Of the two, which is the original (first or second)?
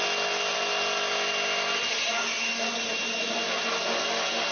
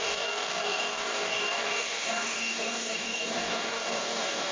first